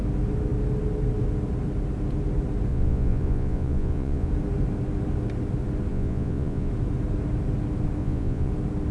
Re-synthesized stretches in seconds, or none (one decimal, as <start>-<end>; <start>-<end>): 2.7-4.3; 5.9-6.7; 8.0-8.5